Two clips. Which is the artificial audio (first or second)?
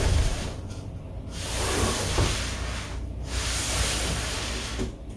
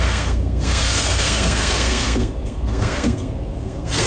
second